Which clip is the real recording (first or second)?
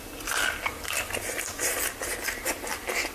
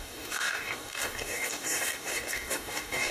first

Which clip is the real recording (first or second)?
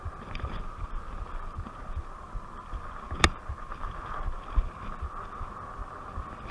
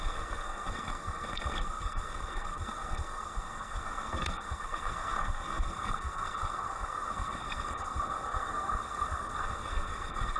first